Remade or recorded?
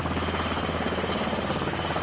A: recorded